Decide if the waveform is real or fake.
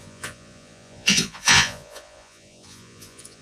fake